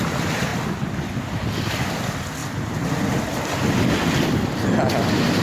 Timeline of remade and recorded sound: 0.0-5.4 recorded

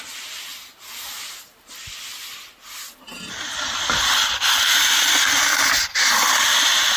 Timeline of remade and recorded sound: 0.0-7.0 recorded

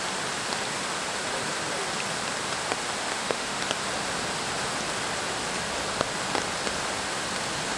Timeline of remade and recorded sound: 0.0-3.0 recorded; 3.0-3.6 remade; 3.6-7.8 recorded

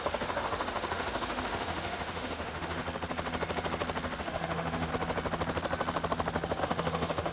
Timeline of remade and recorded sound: 0.0-2.8 remade; 2.8-4.2 recorded; 4.2-4.9 remade; 4.9-6.6 recorded; 6.6-7.3 remade